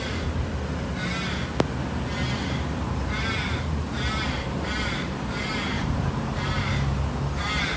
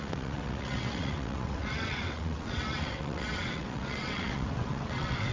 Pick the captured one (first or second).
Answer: first